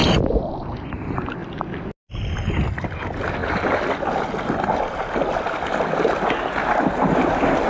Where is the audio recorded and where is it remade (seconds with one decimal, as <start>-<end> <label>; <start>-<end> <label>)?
0.0-7.7 recorded